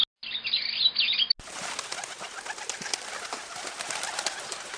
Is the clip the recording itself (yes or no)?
yes